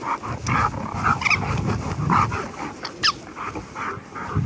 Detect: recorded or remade recorded